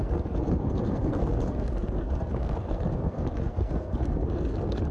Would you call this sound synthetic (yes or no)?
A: yes